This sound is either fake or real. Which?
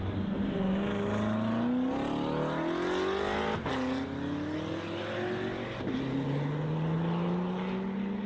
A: real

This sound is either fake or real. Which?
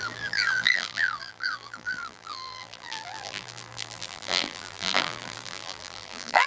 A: fake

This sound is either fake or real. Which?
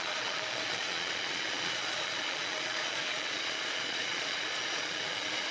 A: fake